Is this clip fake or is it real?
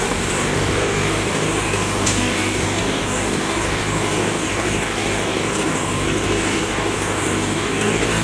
fake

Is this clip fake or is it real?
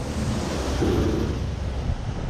real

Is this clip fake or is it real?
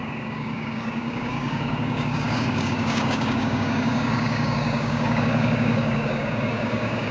fake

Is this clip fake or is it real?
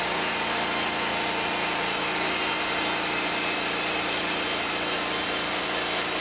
real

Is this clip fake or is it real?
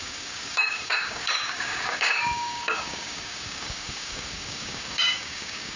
fake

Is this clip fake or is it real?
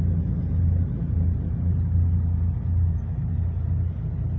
real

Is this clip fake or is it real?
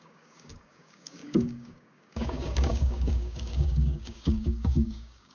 fake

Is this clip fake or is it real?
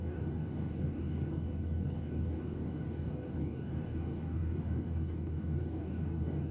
fake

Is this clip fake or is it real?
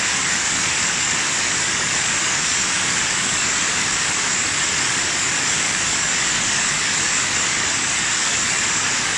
fake